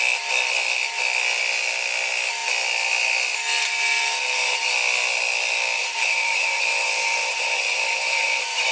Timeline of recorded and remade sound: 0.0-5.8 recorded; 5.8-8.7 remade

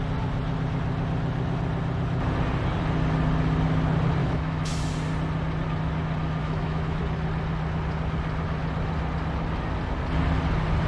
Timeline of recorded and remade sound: 0.0-4.2 recorded; 4.2-4.7 remade; 4.7-6.4 recorded; 6.4-7.0 remade; 7.0-10.9 recorded

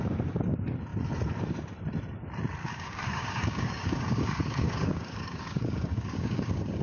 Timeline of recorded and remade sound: 0.0-2.6 recorded; 2.6-6.8 remade

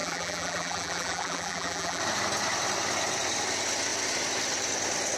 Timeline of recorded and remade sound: 0.0-2.0 remade; 2.0-5.2 recorded

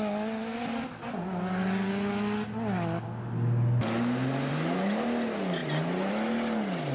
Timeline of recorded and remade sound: 0.0-6.9 recorded

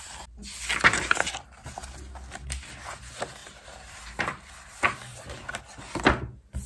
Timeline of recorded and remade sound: 0.0-3.4 recorded; 3.4-4.0 remade; 4.0-5.1 recorded; 5.1-5.6 remade; 5.6-6.7 recorded

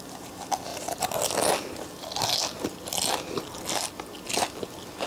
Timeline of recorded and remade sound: 0.0-5.1 recorded